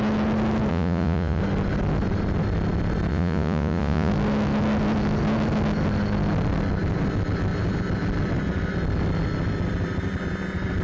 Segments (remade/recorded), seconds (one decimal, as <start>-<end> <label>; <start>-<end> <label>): 0.0-0.7 recorded; 0.7-1.4 remade; 1.4-3.1 recorded; 3.1-4.1 remade; 4.1-10.8 recorded